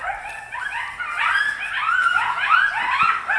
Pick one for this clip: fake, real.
real